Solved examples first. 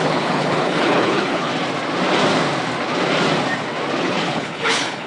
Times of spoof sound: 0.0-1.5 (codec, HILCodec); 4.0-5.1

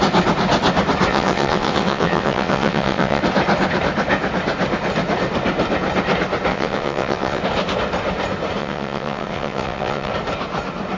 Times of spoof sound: 1.1-3.2 (vocoder, WaveNeXt); 6.5-7.4; 8.6-10.1

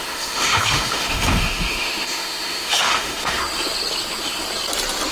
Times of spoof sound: 0.0-3.4 (autoencoder, DAC-VAE)

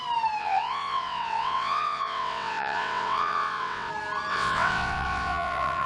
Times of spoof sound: 0.4-3.9 (vocoder, WaveNeXt); 4.3-5.9

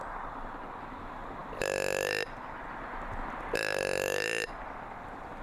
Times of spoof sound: none

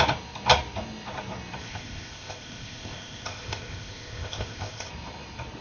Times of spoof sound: 1.6-4.9 (codec, ZipCodec)

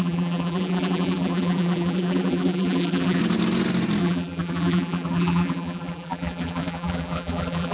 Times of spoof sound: 0.0-3.2 (vocoder, BigVGAN v2); 4.0-7.7

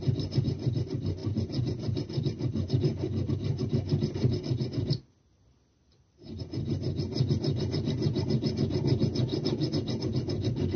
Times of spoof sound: none